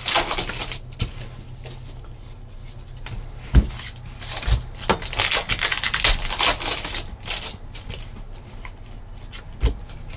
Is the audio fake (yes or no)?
no